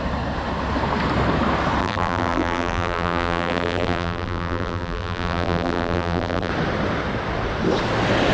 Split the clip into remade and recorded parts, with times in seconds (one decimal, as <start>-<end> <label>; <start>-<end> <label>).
0.0-1.8 recorded; 1.8-6.5 remade; 6.5-8.3 recorded